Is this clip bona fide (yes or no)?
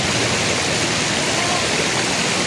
yes